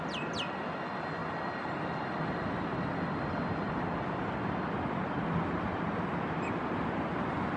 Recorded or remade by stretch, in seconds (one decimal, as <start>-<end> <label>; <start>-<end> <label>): 0.0-7.6 recorded